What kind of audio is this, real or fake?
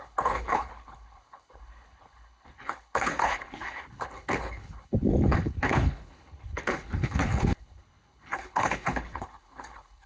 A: fake